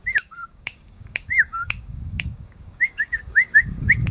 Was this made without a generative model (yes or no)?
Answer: no